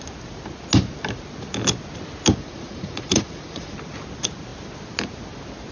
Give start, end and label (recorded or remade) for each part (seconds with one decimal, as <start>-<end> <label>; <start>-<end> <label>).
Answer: 0.0-2.4 recorded; 2.4-3.7 remade; 3.7-5.7 recorded